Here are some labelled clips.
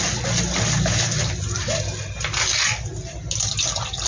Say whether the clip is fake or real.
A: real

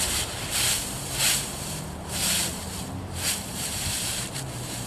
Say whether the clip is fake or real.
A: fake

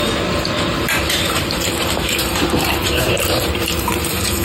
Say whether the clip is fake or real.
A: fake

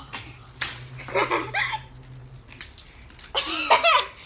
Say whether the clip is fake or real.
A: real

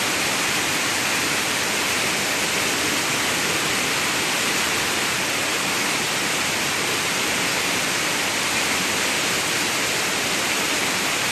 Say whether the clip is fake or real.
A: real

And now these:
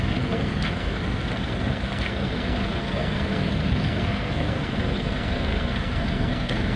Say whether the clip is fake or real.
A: fake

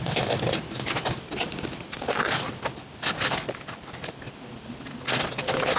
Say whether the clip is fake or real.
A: real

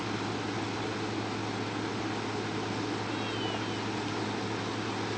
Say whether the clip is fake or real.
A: real